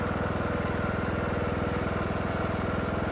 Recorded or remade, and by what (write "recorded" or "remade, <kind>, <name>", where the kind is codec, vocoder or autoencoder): recorded